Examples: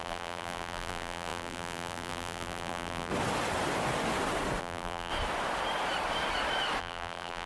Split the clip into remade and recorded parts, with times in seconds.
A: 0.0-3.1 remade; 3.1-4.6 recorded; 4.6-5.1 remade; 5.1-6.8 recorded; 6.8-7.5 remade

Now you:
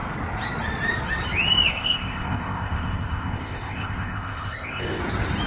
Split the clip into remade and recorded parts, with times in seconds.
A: 0.0-1.7 recorded; 1.7-5.0 remade; 5.0-5.5 recorded

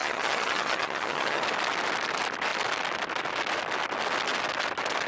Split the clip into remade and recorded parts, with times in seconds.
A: 0.0-1.4 remade; 1.4-5.1 recorded

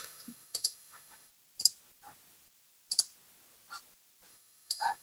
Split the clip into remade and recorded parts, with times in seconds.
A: 0.0-1.3 remade; 1.3-4.3 recorded; 4.3-5.0 remade

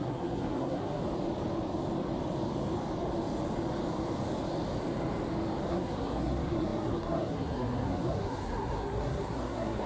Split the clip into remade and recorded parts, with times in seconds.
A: 0.0-1.0 remade; 1.0-5.7 recorded; 5.7-9.9 remade

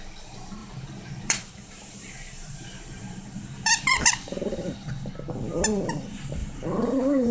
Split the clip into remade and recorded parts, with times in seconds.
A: 0.0-0.6 recorded; 0.6-4.9 remade; 4.9-6.4 recorded; 6.4-7.3 remade